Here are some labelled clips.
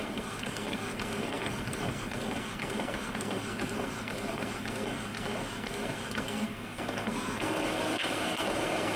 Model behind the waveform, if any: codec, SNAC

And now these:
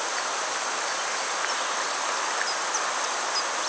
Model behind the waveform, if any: none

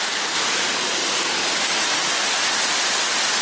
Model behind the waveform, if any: none